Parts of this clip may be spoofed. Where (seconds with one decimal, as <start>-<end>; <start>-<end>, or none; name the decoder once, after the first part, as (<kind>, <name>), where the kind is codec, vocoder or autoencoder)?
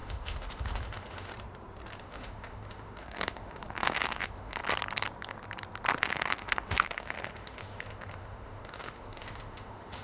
0.0-1.3 (autoencoder, DAC-VAE); 2.0-4.6; 6.0-10.0